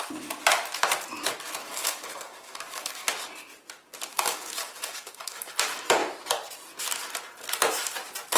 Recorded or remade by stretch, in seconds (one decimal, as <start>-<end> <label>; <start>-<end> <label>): 0.0-1.6 recorded; 1.6-3.1 remade; 3.1-4.1 recorded; 4.1-5.5 remade; 5.5-8.4 recorded